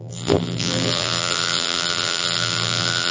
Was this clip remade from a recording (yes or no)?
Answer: yes